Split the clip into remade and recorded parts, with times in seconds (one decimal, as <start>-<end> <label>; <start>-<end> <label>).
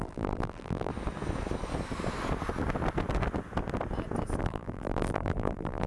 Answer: 0.0-0.9 remade; 0.9-4.4 recorded; 4.4-5.9 remade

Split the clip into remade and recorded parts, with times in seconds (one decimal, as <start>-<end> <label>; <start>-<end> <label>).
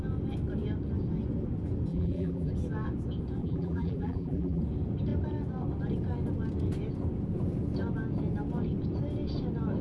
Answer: 0.0-1.9 recorded; 1.9-2.5 remade; 2.5-3.4 recorded; 3.4-4.6 remade; 4.6-9.8 recorded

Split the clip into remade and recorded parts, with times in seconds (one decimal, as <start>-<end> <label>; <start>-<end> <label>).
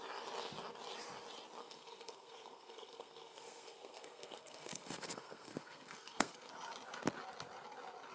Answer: 0.0-1.6 recorded; 1.6-6.5 remade; 6.5-8.1 recorded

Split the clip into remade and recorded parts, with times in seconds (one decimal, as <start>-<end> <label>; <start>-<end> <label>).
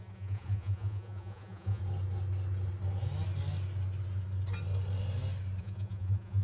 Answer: 0.0-1.8 remade; 1.8-5.6 recorded; 5.6-6.4 remade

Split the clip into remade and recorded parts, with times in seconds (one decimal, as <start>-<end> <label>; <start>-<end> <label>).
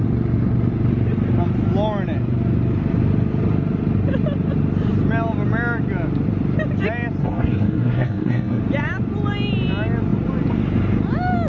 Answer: 0.0-7.2 recorded; 7.2-8.6 remade; 8.6-11.5 recorded